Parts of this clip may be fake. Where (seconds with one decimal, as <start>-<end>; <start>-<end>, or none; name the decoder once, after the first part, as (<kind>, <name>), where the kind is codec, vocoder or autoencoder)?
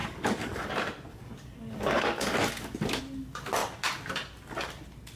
0.0-0.7 (codec, DAC); 1.1-3.0